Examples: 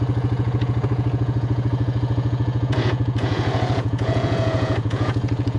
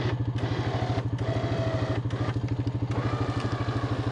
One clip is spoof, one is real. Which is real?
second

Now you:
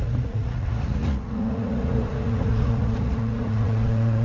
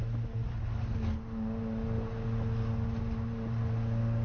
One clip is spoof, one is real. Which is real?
second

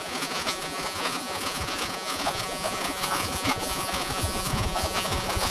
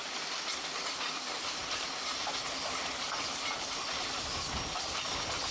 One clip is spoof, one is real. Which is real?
second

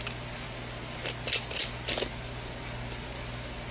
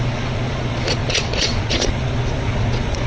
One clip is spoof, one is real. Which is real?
first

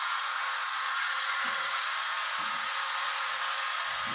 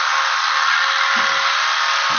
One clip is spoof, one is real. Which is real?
second